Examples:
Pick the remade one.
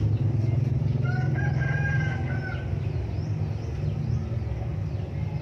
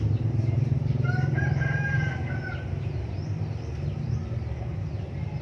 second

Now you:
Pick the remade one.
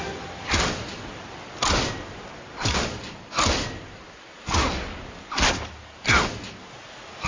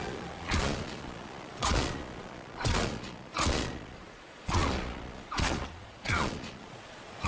second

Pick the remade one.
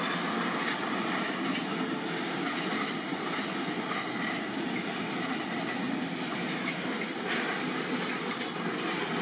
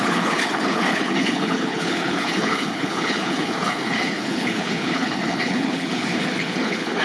second